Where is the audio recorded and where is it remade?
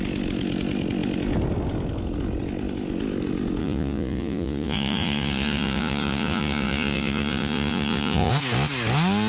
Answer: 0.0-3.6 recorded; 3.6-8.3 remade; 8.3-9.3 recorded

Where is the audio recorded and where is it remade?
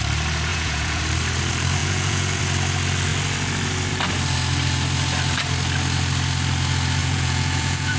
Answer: 0.0-0.5 recorded; 0.5-1.0 remade; 1.0-1.8 recorded; 1.8-2.4 remade; 2.4-7.0 recorded; 7.0-8.0 remade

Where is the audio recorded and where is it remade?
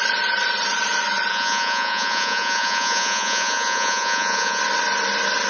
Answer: 0.0-1.3 recorded; 1.3-4.6 remade; 4.6-5.5 recorded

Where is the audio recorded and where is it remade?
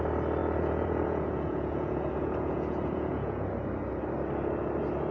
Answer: 0.0-0.4 recorded; 0.4-3.5 remade; 3.5-5.1 recorded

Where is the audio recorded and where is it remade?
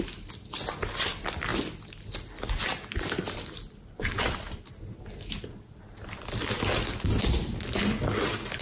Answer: 0.0-8.6 recorded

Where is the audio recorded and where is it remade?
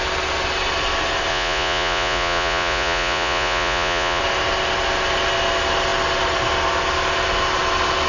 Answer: 0.0-1.3 recorded; 1.3-4.2 remade; 4.2-8.1 recorded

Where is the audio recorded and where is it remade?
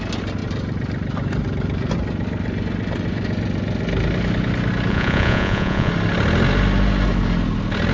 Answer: 0.0-4.9 recorded; 4.9-5.9 remade; 5.9-7.9 recorded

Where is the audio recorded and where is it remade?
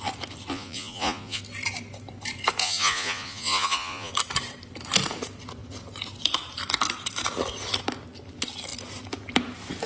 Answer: 0.0-0.5 recorded; 0.5-1.4 remade; 1.4-2.6 recorded; 2.6-4.1 remade; 4.1-9.9 recorded